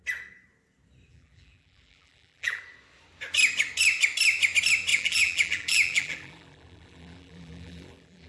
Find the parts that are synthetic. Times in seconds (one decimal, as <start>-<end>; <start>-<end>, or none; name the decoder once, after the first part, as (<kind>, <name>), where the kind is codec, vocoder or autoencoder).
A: 1.1-2.6 (vocoder, BigVGAN v2); 4.9-8.3